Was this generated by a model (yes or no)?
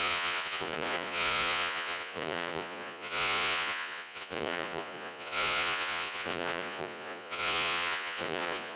yes